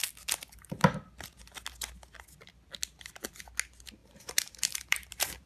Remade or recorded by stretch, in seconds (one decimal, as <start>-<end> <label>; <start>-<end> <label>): 0.0-4.0 recorded; 4.0-5.5 remade